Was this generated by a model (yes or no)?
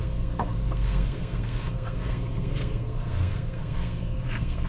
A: yes